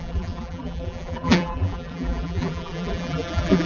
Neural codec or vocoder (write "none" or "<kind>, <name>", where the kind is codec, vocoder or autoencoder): vocoder, BigVGAN v2